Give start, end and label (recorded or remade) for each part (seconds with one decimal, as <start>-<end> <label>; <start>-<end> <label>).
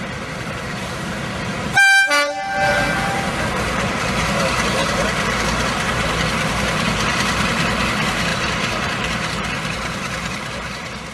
0.0-11.1 remade